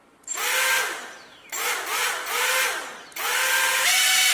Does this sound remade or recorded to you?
recorded